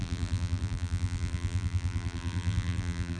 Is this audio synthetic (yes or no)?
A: yes